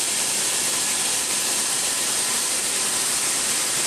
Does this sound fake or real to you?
fake